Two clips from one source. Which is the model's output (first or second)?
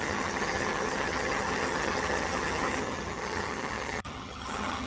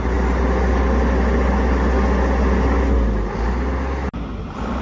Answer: first